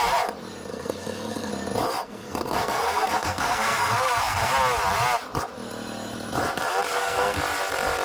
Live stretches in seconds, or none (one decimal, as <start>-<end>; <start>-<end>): 0.0-0.7; 1.5-2.0; 4.5-6.9; 7.4-8.0